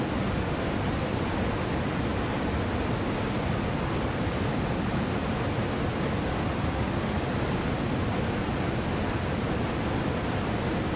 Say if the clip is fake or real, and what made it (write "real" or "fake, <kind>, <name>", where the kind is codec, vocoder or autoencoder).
real